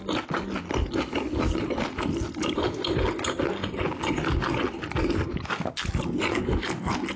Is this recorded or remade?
recorded